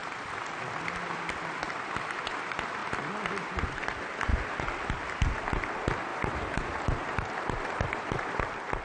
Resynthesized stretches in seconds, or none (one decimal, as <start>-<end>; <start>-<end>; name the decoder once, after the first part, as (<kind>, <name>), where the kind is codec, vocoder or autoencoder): 0.0-0.5 (vocoder, BigVGAN v2); 6.1-8.4